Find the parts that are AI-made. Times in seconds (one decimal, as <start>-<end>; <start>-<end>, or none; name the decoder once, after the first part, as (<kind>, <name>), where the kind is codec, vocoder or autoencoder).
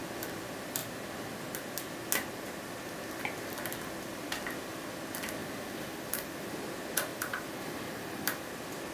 5.4-6.5 (vocoder, BigVGAN v2); 7.1-8.5